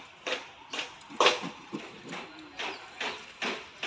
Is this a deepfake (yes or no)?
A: no